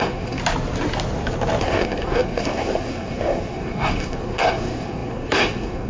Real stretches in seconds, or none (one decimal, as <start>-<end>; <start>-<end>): 0.4-1.6